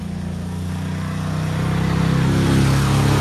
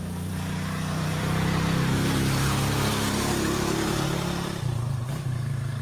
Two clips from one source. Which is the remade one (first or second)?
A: second